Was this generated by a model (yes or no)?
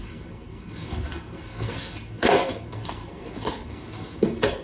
yes